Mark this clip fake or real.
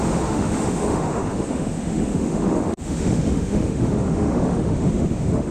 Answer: fake